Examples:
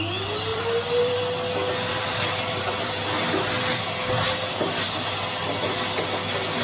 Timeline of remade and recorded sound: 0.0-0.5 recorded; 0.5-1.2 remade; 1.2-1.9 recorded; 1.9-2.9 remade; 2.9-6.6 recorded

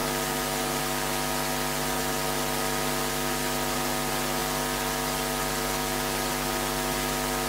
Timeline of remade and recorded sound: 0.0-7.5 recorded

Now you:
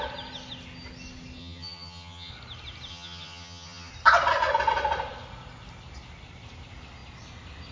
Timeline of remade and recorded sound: 0.0-1.4 recorded; 1.4-2.3 remade; 2.3-2.9 recorded; 2.9-3.9 remade; 3.9-7.7 recorded

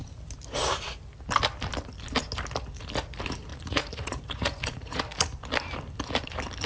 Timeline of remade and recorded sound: 0.0-3.5 recorded; 3.5-5.0 remade; 5.0-6.7 recorded